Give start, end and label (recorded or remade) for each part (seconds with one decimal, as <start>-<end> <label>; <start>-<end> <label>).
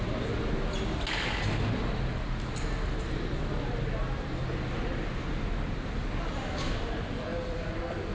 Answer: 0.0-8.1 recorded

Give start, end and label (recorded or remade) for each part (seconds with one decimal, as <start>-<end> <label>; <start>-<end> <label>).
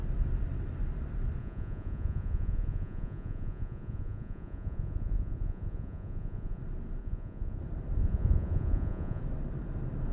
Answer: 0.0-1.4 recorded; 1.4-6.6 remade; 6.6-7.0 recorded; 7.0-7.6 remade; 7.6-8.0 recorded; 8.0-9.2 remade; 9.2-10.1 recorded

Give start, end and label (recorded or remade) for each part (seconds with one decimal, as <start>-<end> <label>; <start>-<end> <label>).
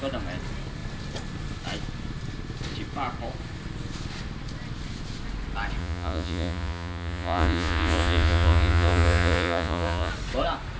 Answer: 0.0-5.8 recorded; 5.8-10.1 remade; 10.1-10.8 recorded